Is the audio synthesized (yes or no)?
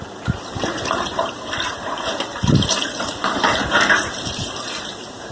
yes